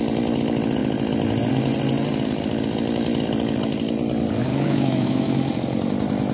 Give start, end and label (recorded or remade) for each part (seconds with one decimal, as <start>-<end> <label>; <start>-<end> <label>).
0.0-4.5 recorded; 4.5-5.5 remade; 5.5-6.3 recorded